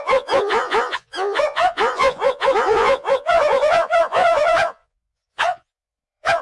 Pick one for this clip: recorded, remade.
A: remade